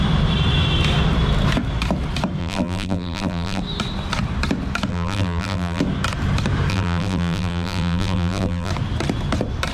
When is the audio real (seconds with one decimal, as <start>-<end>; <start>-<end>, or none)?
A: 0.0-2.4; 3.6-4.9; 5.8-6.7; 8.7-9.7